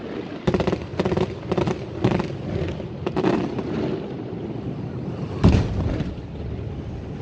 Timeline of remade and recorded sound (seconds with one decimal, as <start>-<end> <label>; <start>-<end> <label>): 0.0-7.2 recorded